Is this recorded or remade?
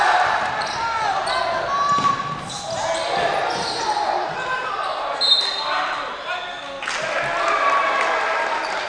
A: recorded